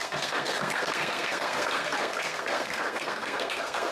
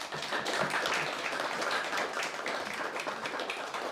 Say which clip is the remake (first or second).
first